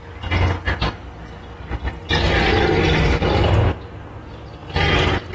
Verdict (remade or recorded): recorded